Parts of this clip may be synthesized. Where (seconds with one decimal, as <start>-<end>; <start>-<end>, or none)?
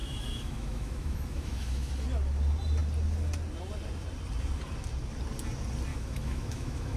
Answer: 0.0-1.9; 5.9-7.0